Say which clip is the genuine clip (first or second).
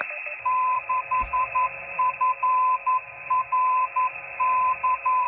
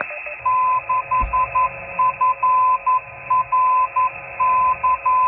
second